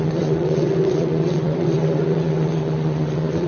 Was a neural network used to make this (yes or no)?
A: yes